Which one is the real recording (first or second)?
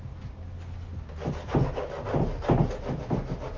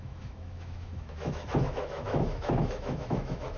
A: first